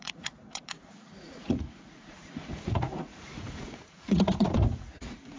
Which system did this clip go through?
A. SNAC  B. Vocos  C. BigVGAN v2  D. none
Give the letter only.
B